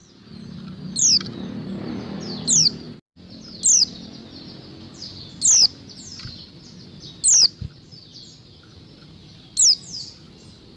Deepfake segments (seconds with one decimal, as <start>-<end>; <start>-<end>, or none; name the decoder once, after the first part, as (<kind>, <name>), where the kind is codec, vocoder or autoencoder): none